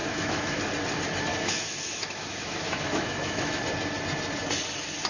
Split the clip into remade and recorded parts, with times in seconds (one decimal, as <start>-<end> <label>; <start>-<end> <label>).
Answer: 0.0-0.6 remade; 0.6-1.3 recorded; 1.3-3.6 remade; 3.6-5.1 recorded